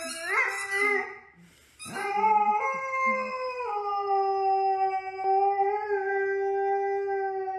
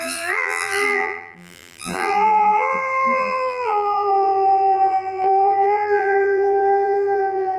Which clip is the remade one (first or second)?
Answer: second